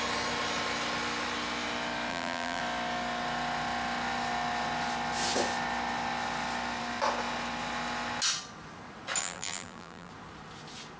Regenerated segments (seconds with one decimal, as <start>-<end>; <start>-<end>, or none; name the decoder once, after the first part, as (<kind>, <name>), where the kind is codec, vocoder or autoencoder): 2.1-2.6 (vocoder, BigVGAN v2); 9.2-10.1